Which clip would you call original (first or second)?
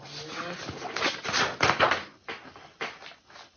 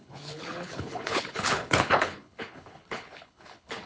first